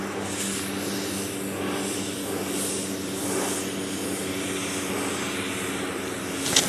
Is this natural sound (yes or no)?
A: yes